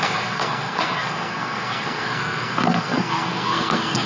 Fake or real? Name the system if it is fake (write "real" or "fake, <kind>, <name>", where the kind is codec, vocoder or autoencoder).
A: fake, codec, SNAC